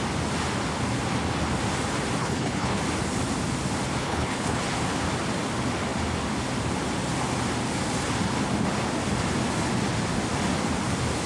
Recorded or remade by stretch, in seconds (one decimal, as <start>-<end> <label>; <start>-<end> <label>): 0.0-2.2 recorded; 2.2-2.8 remade; 2.8-4.0 recorded; 4.0-4.6 remade; 4.6-11.3 recorded

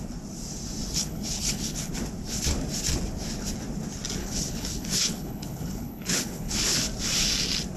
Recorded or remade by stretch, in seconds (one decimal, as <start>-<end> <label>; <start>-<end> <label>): 0.0-1.0 recorded; 1.0-1.9 remade; 1.9-4.2 recorded; 4.2-6.8 remade; 6.8-7.8 recorded